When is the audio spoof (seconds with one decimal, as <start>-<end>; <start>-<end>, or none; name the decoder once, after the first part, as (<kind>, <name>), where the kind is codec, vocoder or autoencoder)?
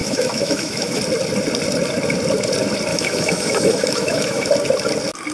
0.0-1.0 (autoencoder, DAC-VAE); 2.9-4.5